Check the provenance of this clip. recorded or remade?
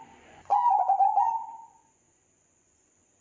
remade